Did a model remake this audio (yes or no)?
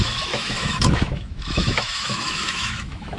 yes